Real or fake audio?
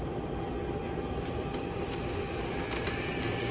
real